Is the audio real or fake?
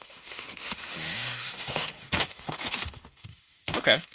fake